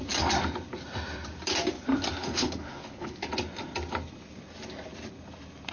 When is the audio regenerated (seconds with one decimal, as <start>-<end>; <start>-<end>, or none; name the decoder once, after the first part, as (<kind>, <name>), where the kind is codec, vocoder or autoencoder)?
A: 2.2-3.3 (codec, HILCodec)